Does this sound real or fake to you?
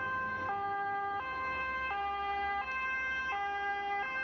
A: real